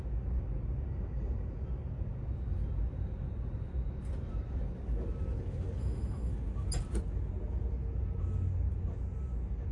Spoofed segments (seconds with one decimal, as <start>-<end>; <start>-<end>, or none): 5.8-6.3